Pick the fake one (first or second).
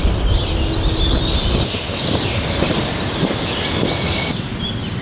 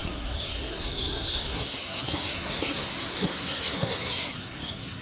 second